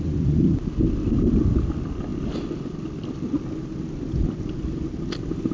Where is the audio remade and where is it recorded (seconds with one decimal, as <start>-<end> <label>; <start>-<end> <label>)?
0.0-5.5 recorded